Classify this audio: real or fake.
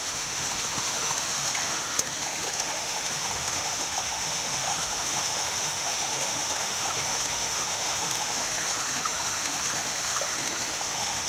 fake